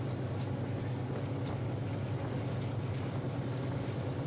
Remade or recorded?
recorded